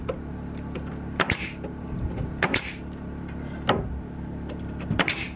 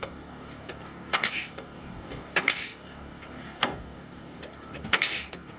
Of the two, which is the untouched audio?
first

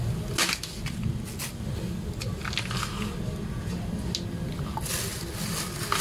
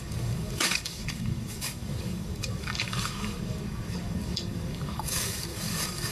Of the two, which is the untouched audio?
first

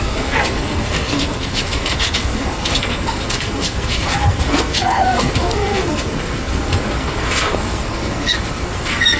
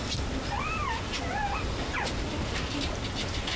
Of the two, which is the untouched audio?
second